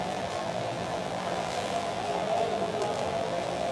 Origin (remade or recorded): remade